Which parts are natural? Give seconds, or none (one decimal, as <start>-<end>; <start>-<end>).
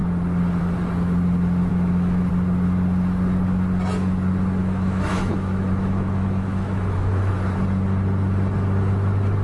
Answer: 0.0-1.7; 2.3-4.6; 7.3-9.4